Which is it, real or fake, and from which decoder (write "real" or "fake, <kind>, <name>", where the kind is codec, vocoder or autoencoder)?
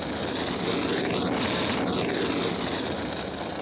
real